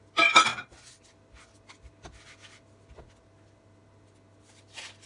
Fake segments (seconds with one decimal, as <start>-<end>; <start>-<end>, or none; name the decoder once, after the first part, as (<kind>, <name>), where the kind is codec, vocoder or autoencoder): 0.5-1.0 (vocoder, BigVGAN v2)